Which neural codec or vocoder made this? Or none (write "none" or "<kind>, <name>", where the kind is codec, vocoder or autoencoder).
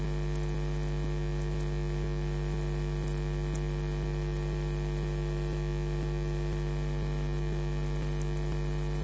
none